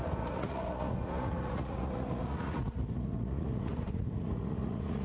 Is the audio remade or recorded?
remade